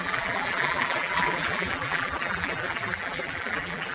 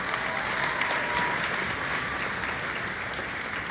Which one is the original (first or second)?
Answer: second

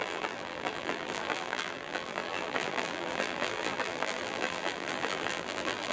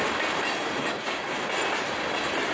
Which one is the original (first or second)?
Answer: second